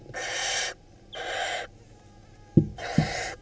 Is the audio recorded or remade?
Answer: recorded